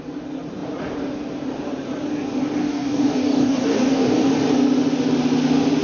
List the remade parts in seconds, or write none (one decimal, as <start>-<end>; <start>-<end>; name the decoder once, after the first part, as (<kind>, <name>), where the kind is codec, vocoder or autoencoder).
2.6-4.3 (codec, DAC)